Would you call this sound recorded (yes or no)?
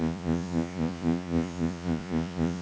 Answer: no